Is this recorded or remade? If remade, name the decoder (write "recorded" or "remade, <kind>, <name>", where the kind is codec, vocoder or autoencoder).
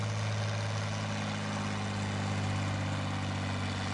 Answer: recorded